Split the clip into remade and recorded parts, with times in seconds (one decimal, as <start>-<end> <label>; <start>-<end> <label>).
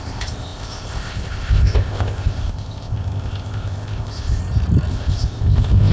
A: 0.0-4.4 remade; 4.4-4.9 recorded; 4.9-5.9 remade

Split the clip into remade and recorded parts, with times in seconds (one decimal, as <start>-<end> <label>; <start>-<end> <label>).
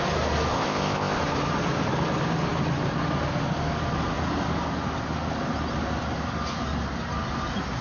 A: 0.0-0.5 recorded; 0.5-1.2 remade; 1.2-7.8 recorded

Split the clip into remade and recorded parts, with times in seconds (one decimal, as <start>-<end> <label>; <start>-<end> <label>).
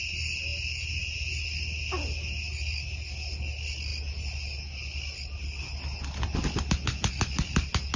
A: 0.0-8.0 recorded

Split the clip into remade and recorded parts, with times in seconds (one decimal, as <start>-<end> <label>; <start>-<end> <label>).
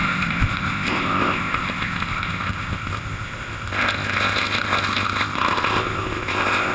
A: 0.0-6.7 remade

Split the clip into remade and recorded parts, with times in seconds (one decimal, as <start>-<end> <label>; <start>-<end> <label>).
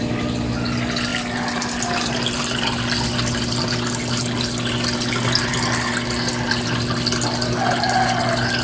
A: 0.0-8.6 recorded